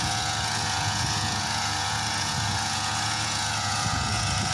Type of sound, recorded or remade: remade